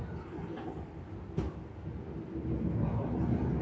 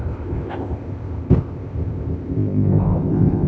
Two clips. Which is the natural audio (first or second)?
first